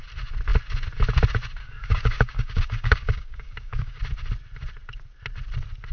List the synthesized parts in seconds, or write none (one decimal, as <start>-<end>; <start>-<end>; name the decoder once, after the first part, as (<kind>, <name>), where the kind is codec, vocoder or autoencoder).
1.6-4.0 (codec, DAC)